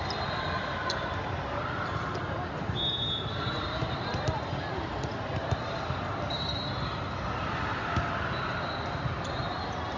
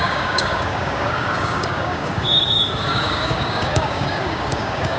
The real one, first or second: first